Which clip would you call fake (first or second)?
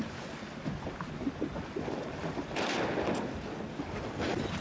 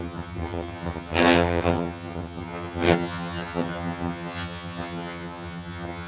second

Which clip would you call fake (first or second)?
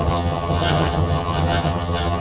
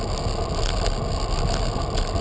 first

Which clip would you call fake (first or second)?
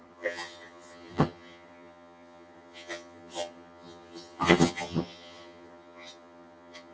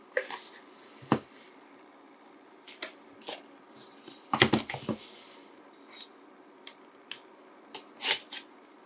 first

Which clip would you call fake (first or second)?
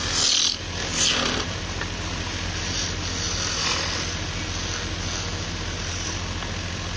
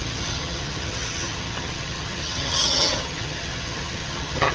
second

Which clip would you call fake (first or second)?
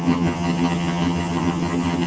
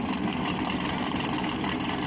first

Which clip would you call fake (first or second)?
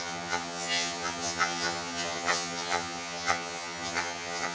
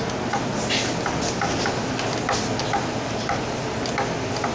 first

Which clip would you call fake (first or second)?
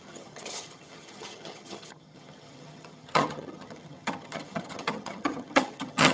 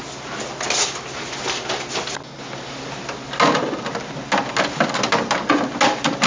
first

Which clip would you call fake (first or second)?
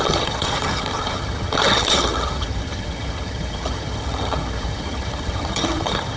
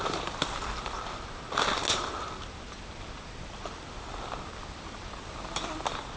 first